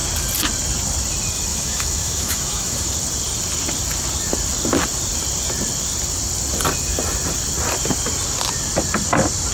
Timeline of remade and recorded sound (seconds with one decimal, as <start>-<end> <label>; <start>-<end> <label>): 0.0-1.5 recorded; 1.5-2.9 remade; 2.9-9.5 recorded